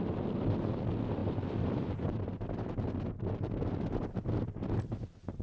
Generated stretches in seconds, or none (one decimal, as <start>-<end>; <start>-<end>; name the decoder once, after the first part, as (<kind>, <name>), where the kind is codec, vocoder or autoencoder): 1.2-1.9 (vocoder, BigVGAN v2)